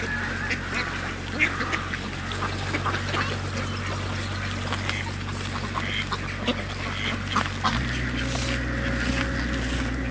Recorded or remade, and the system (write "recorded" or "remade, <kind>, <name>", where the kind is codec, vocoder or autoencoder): recorded